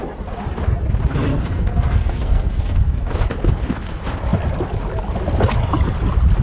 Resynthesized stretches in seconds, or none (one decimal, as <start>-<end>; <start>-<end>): 1.3-3.1